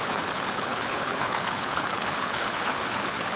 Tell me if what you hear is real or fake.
fake